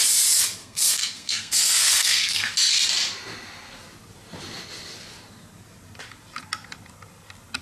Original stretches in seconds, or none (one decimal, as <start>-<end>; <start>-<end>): 0.0-0.6; 2.5-7.6